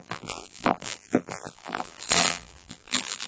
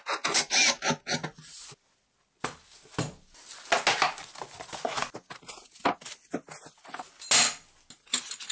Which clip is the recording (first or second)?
second